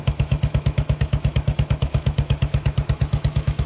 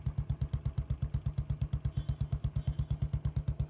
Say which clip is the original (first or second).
second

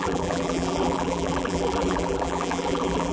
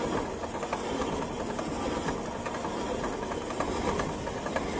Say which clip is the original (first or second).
second